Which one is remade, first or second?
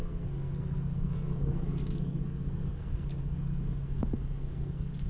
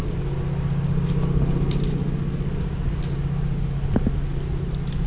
first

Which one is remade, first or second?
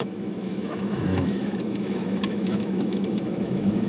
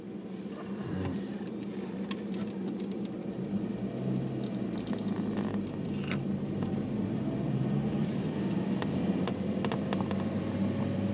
first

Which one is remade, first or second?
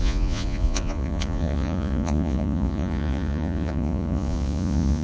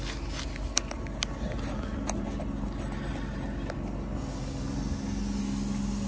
first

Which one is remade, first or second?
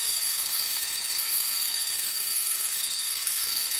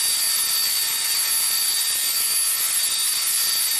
first